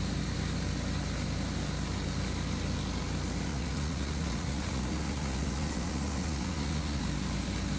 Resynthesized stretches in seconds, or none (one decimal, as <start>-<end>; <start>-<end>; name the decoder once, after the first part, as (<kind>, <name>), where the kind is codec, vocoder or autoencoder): 3.5-7.0 (vocoder, Vocos)